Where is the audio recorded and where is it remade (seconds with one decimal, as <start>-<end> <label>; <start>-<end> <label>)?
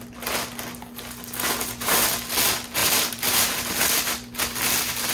0.0-2.8 recorded; 2.8-3.7 remade; 3.7-5.1 recorded